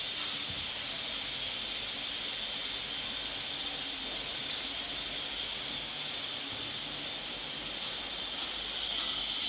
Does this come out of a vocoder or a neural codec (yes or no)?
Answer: no